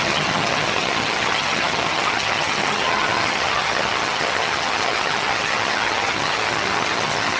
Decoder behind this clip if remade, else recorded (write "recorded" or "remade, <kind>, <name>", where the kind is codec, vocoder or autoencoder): remade, vocoder, HiFi-GAN